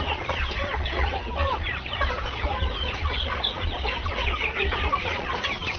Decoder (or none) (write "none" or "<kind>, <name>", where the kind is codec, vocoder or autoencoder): vocoder, Vocos